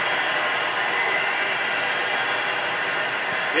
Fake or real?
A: real